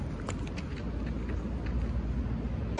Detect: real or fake real